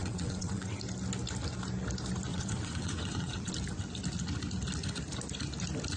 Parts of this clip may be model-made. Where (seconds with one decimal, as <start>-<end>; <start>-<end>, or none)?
0.0-0.8; 2.3-3.5